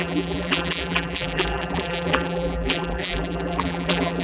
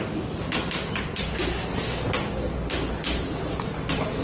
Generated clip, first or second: first